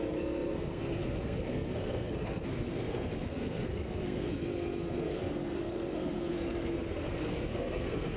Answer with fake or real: fake